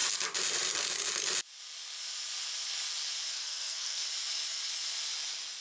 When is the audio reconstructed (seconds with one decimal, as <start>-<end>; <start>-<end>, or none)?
3.3-4.1